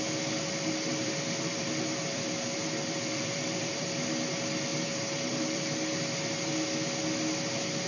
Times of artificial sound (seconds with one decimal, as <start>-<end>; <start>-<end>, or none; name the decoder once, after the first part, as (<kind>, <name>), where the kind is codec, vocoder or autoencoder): 0.9-4.1 (vocoder, BigVGAN v2); 4.7-5.6